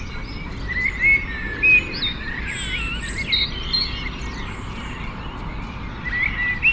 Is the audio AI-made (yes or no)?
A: no